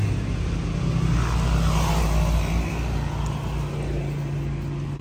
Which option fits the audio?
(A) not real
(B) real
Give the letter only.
B